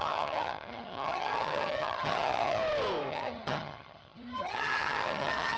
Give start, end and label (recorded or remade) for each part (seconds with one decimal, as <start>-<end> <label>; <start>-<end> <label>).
0.0-2.6 remade; 2.6-3.1 recorded; 3.1-5.6 remade